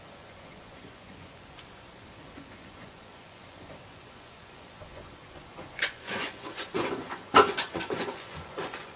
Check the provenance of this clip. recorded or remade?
remade